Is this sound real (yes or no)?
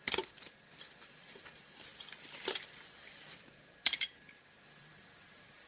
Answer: no